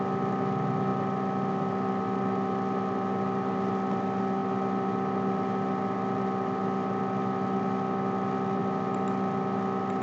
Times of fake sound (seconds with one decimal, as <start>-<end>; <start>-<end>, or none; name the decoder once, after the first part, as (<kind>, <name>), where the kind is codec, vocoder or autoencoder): none